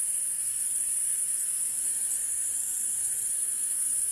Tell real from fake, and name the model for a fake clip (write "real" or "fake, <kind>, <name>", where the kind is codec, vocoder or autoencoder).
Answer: fake, codec, SNAC